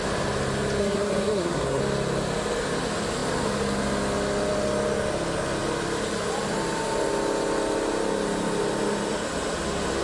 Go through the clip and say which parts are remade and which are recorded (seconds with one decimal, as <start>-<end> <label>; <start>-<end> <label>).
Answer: 0.0-0.8 recorded; 0.8-1.8 remade; 1.8-10.0 recorded